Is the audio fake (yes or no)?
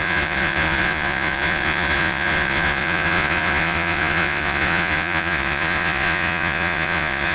yes